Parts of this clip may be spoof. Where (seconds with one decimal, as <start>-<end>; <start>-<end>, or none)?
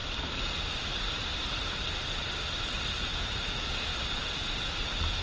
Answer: 3.1-3.9